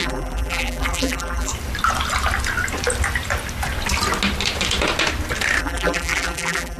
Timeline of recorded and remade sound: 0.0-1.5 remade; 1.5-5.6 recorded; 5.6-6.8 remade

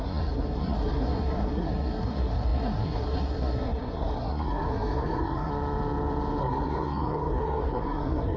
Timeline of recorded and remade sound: 0.0-5.5 remade; 5.5-6.4 recorded; 6.4-8.4 remade

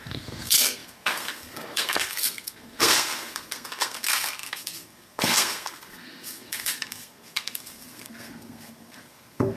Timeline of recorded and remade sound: 0.0-9.6 remade

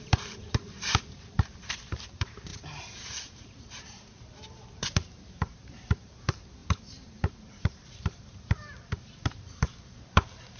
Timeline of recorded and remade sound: 0.0-10.6 remade

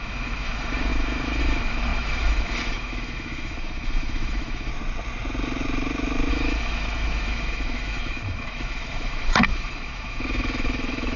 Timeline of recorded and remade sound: 0.0-4.7 remade; 4.7-6.3 recorded; 6.3-11.2 remade

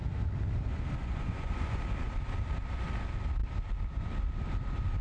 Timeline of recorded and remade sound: 0.0-1.0 recorded; 1.0-1.8 remade; 1.8-5.0 recorded